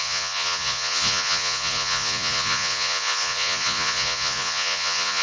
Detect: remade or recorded remade